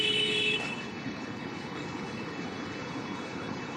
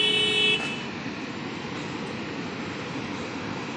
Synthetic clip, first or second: first